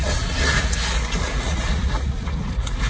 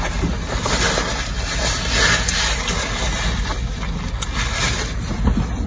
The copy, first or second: first